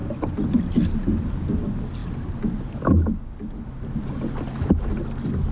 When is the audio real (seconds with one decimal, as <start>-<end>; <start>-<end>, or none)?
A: 0.0-5.5